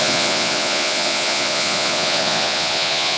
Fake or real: fake